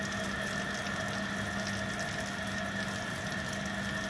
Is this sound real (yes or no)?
yes